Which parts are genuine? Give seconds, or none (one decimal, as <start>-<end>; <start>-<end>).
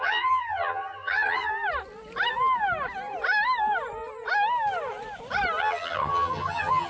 1.5-5.6